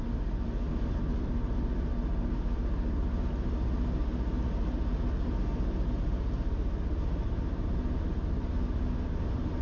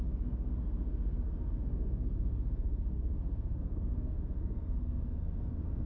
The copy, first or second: second